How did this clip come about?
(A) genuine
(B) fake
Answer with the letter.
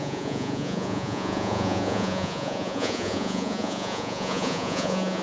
B